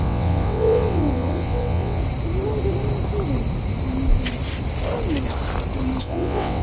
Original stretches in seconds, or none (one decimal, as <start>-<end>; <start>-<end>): 2.0-6.0